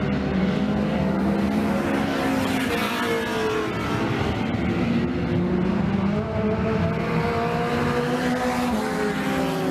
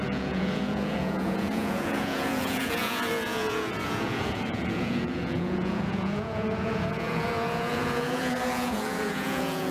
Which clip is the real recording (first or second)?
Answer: first